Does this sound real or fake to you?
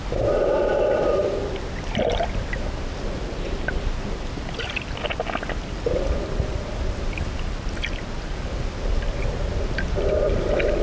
real